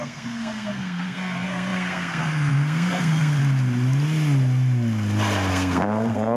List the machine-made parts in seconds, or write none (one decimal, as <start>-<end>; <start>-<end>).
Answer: 0.0-3.4; 5.5-6.4